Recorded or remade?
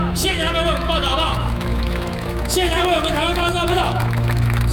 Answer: remade